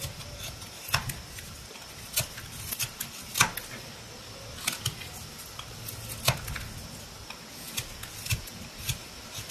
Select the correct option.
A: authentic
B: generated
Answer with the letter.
A